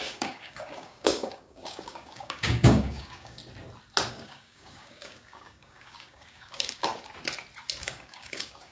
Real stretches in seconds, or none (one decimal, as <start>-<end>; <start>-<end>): 3.4-4.1; 6.9-7.8